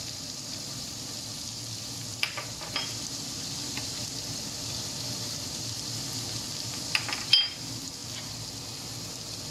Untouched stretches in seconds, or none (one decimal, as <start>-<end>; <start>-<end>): 8.0-9.5